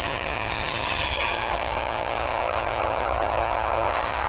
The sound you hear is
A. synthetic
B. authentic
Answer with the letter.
A